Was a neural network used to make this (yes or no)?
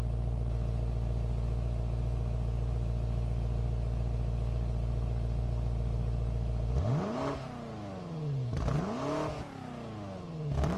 no